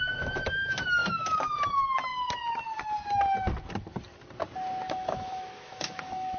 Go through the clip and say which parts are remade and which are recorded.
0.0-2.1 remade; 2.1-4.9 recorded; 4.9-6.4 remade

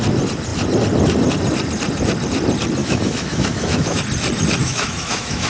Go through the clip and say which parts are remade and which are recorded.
0.0-2.8 recorded; 2.8-4.0 remade; 4.0-4.6 recorded; 4.6-5.5 remade

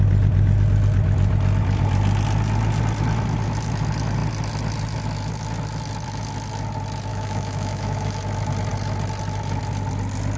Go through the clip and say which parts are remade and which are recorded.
0.0-7.1 recorded; 7.1-8.2 remade; 8.2-10.4 recorded

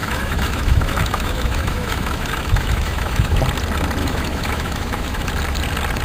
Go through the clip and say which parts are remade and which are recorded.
0.0-3.4 remade; 3.4-4.0 recorded; 4.0-5.3 remade; 5.3-6.0 recorded

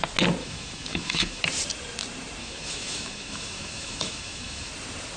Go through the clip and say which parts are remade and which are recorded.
0.0-0.4 recorded; 0.4-1.4 remade; 1.4-2.4 recorded; 2.4-4.7 remade; 4.7-5.2 recorded

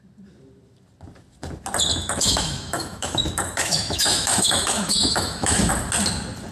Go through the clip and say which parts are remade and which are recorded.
0.0-1.9 recorded; 1.9-5.7 remade; 5.7-6.5 recorded

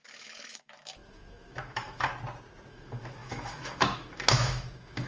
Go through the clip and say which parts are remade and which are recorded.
0.0-2.1 remade; 2.1-2.7 recorded; 2.7-5.1 remade